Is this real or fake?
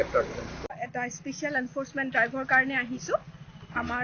real